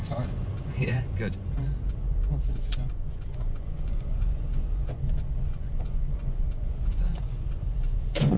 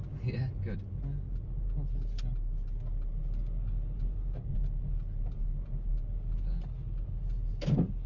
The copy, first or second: first